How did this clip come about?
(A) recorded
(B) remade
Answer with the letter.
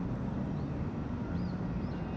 A